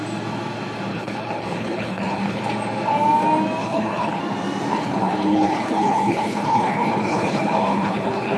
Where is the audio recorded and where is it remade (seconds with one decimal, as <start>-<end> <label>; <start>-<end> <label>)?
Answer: 0.0-0.9 recorded; 0.9-2.4 remade; 2.4-3.6 recorded; 3.6-4.2 remade; 4.2-4.7 recorded; 4.7-8.4 remade